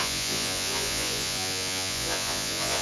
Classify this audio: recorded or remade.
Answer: remade